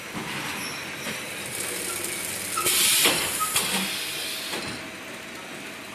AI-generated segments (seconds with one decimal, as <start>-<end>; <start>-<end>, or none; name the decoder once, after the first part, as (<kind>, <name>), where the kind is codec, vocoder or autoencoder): none